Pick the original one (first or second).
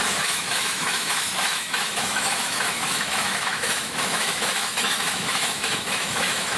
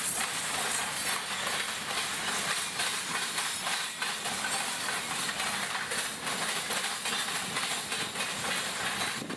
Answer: second